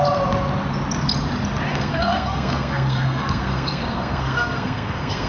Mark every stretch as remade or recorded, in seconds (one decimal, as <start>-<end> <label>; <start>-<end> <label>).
0.0-1.7 recorded; 1.7-5.3 remade